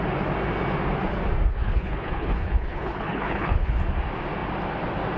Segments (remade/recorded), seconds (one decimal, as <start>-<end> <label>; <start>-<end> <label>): 0.0-1.5 recorded; 1.5-3.8 remade; 3.8-5.2 recorded